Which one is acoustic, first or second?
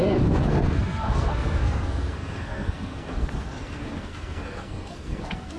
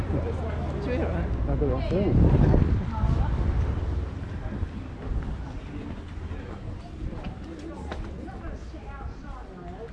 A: second